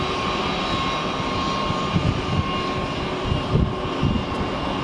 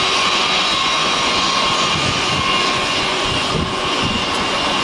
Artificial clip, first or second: second